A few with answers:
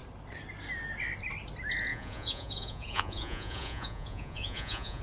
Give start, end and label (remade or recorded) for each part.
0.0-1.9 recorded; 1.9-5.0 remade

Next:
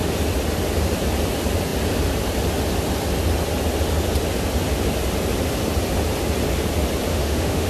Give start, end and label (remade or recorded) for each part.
0.0-7.1 recorded; 7.1-7.7 remade